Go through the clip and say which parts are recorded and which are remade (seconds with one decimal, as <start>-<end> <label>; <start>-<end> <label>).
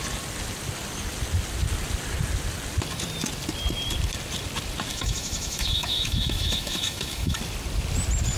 0.0-4.9 recorded; 4.9-7.4 remade; 7.4-8.4 recorded